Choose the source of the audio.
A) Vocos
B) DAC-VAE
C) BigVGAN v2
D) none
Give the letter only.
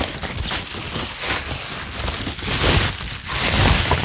D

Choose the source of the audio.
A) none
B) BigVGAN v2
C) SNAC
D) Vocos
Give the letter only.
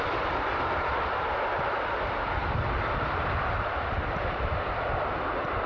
B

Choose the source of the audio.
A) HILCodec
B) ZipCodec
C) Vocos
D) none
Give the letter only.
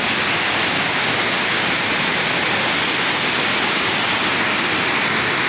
D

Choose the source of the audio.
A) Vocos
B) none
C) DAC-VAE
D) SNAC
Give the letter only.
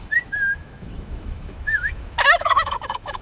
C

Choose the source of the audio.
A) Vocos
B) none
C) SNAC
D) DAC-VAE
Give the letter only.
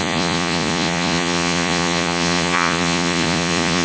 A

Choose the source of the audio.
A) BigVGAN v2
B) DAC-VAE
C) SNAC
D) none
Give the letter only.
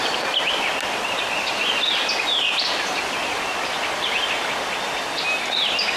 D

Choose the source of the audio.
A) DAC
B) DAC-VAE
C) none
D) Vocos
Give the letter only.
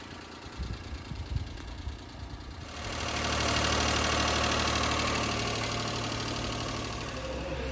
C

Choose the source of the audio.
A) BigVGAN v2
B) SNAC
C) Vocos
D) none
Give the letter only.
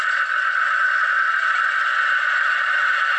D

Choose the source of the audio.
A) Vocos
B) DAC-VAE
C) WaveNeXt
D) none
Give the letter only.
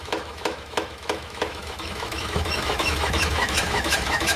B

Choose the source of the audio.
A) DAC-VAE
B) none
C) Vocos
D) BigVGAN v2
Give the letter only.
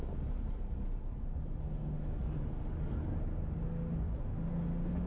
B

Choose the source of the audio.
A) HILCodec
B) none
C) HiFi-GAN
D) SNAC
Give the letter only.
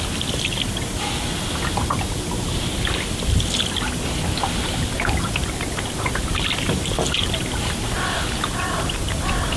B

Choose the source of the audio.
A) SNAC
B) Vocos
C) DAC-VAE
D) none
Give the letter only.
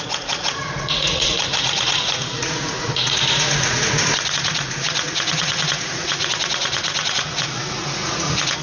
B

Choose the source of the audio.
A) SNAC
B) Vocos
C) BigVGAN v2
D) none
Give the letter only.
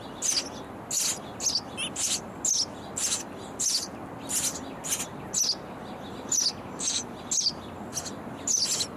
D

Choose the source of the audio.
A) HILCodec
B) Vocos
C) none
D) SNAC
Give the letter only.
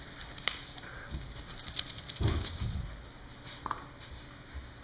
C